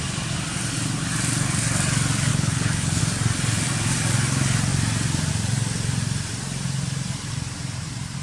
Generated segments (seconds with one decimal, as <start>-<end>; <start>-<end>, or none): 2.3-3.0